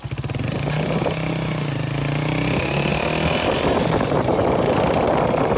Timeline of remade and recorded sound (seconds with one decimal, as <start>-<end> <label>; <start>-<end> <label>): 0.0-5.6 recorded